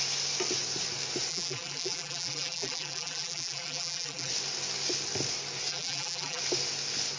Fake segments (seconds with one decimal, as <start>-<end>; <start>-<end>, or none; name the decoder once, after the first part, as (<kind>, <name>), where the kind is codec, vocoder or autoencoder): 1.3-4.3 (vocoder, BigVGAN v2); 5.7-6.4